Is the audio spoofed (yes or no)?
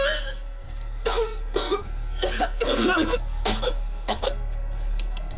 yes